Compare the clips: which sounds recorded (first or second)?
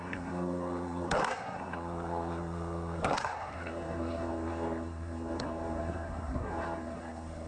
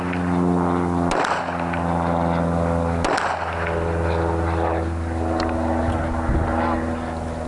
second